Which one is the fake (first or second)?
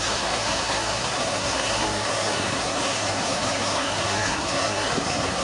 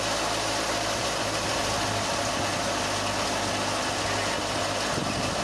first